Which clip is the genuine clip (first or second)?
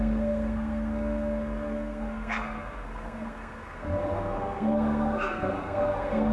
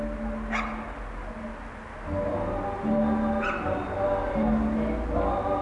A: second